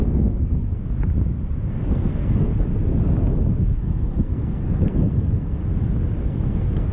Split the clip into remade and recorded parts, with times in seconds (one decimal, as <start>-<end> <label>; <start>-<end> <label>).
0.0-0.8 remade; 0.8-1.7 recorded; 1.7-2.5 remade; 2.5-3.6 recorded; 3.6-5.6 remade; 5.6-6.2 recorded; 6.2-6.9 remade